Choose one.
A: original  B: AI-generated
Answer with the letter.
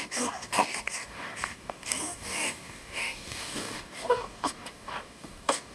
B